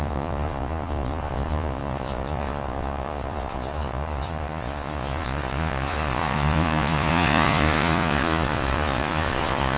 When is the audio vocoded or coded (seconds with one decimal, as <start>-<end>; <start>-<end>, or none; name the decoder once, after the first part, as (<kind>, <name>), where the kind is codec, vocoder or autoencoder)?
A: 0.0-9.8 (vocoder, Vocos)